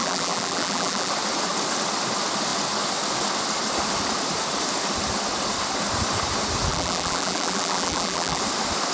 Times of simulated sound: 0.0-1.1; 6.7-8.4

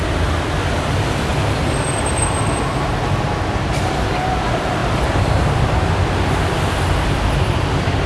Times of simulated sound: 1.3-2.0; 4.8-5.4